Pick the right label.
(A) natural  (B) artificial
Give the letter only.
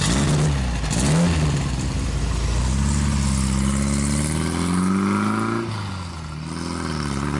A